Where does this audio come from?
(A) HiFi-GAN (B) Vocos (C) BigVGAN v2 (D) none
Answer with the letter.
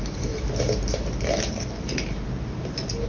D